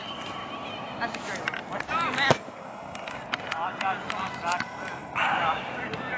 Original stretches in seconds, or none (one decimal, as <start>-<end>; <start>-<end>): 0.0-6.2